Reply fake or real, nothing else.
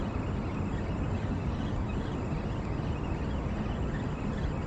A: real